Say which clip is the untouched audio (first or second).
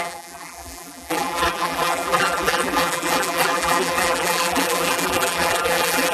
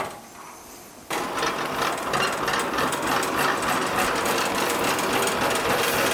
second